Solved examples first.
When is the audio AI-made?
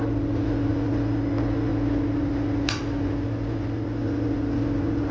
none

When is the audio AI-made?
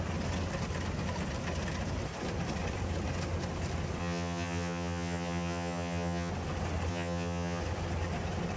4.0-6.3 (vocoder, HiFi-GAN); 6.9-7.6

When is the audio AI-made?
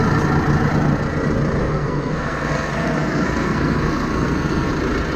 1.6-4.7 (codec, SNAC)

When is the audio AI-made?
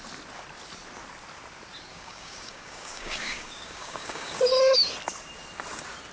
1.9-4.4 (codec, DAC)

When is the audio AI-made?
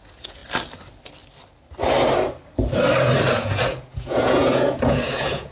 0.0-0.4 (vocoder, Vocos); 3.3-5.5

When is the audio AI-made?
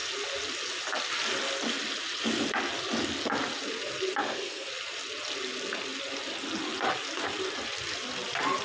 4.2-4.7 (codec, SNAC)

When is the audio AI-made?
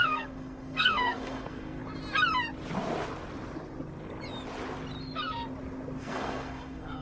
0.0-1.8 (codec, SNAC); 6.0-7.0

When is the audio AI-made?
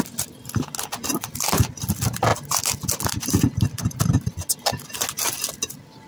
none